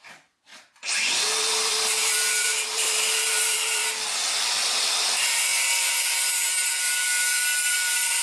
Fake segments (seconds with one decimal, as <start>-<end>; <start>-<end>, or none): 0.0-3.8; 4.6-8.2